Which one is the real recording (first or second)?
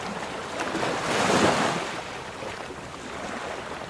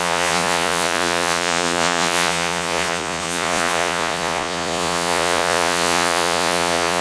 first